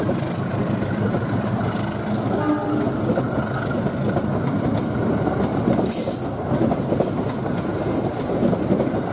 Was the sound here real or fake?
real